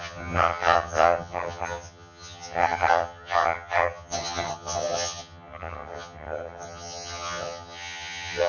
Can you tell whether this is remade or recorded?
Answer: remade